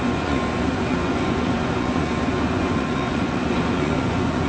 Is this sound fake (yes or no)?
yes